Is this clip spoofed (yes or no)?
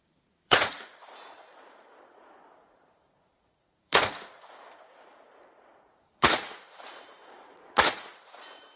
yes